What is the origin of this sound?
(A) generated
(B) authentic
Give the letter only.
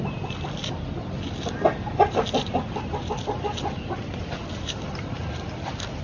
B